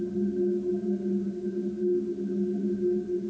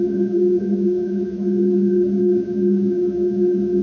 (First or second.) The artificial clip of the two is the second